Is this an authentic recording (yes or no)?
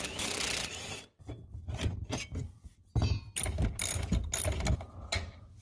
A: yes